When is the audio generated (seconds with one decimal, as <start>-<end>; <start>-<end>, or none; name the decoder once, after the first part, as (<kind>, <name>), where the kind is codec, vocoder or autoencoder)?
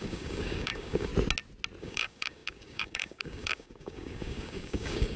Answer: 0.0-1.1 (codec, DAC); 1.8-5.2